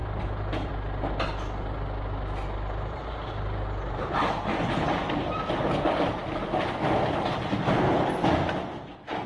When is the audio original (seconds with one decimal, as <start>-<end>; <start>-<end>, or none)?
0.0-9.3